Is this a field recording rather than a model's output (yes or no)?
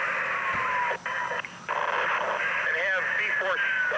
yes